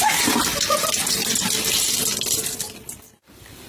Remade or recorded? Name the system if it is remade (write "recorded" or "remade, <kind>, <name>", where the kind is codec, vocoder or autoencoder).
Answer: remade, vocoder, BigVGAN v2